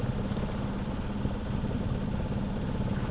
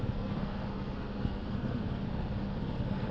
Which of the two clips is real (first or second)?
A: first